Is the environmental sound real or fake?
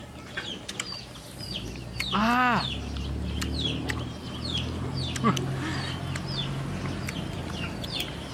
real